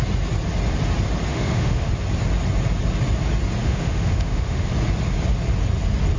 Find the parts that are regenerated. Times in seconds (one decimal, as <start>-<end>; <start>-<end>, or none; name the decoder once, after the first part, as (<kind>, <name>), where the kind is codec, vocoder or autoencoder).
1.3-1.9 (autoencoder, DAC-VAE); 3.6-4.7